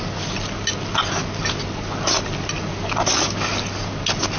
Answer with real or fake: real